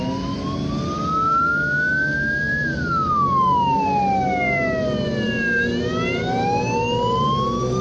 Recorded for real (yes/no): yes